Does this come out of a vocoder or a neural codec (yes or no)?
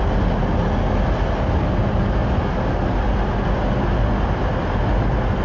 no